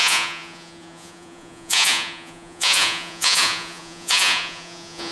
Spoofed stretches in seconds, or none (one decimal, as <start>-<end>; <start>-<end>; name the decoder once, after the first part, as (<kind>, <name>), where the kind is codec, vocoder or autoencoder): 0.0-5.1 (vocoder, Vocos)